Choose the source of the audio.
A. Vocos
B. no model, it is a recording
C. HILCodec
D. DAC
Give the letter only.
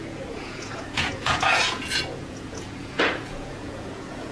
A